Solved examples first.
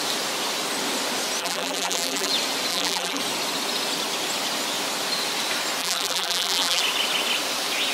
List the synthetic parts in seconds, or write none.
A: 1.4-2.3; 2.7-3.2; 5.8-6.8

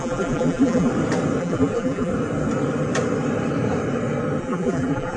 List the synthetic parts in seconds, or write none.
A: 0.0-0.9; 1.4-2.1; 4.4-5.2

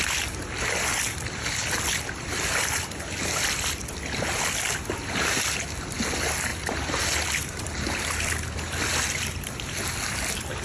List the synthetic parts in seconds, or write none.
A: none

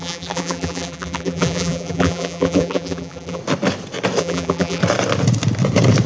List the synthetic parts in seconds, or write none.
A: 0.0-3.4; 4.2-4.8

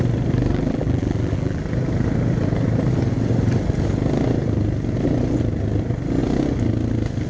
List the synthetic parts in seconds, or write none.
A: 0.5-1.6

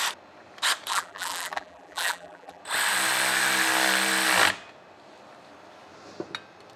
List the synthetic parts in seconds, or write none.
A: 0.9-2.6

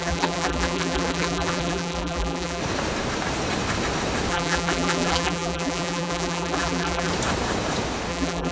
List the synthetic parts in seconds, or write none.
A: 0.0-2.6; 4.3-7.1; 8.1-8.5

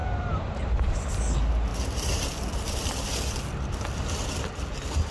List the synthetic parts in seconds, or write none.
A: 0.0-1.2; 1.7-2.2